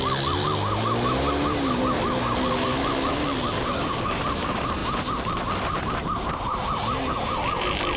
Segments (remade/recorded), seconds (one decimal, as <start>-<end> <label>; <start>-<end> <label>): 0.0-8.0 recorded